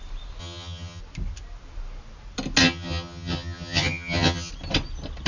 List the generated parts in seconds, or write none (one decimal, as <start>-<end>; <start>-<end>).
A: 0.4-1.0; 2.6-4.5